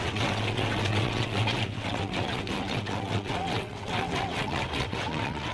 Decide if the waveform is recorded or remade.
remade